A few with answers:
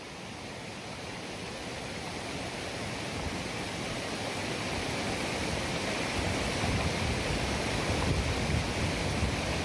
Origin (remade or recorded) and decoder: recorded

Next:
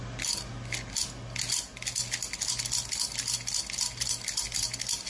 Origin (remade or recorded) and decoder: recorded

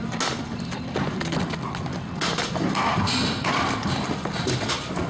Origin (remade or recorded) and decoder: recorded